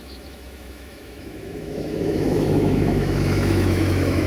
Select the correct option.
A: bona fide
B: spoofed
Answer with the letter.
B